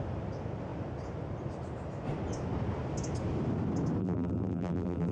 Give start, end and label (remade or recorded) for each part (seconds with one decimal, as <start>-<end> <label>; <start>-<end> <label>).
0.0-4.0 recorded; 4.0-5.1 remade